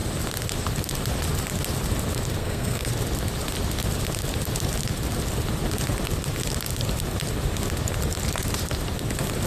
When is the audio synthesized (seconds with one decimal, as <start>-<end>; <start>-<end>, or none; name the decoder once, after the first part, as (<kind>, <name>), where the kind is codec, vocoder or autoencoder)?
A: 2.4-2.9 (codec, SNAC)